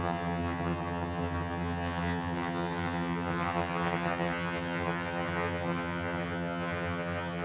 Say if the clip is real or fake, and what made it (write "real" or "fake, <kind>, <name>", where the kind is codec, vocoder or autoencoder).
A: fake, vocoder, HiFi-GAN